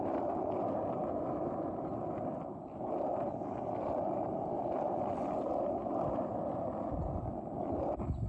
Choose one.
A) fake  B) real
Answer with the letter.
B